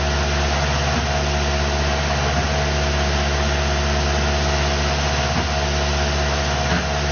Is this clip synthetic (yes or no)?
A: no